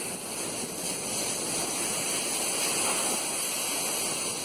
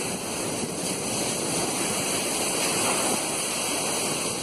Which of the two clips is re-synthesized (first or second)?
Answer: second